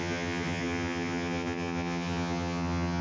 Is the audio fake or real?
fake